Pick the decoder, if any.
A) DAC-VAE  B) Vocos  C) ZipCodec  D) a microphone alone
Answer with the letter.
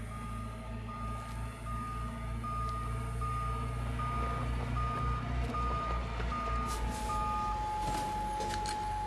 D